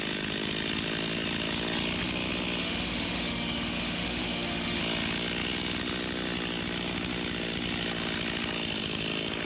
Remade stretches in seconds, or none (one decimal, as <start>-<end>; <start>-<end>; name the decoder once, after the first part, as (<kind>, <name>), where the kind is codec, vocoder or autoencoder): 2.6-4.8 (autoencoder, DAC-VAE)